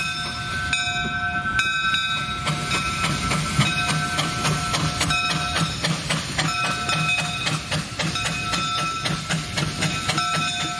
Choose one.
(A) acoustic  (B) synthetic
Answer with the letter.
A